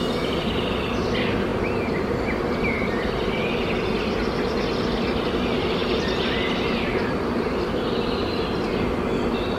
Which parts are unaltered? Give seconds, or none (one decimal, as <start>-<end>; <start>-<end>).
0.0-9.6